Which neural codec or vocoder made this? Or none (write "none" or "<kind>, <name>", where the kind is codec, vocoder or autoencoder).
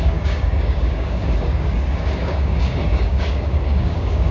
codec, DAC